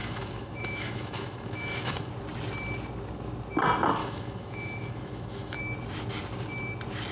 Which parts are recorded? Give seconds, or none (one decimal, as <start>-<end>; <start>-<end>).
2.1-4.0; 5.6-7.1